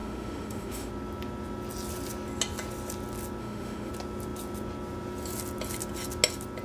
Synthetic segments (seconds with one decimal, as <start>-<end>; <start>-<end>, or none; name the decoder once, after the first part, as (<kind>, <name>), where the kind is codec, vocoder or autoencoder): 0.0-0.9 (autoencoder, DAC-VAE); 3.4-3.9